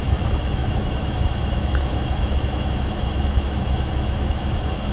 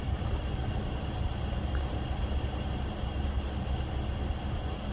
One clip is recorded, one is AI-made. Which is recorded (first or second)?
second